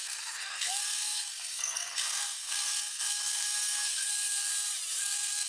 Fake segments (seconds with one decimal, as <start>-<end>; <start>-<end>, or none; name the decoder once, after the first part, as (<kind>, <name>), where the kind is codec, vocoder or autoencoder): 0.0-4.5 (codec, SNAC); 5.0-5.5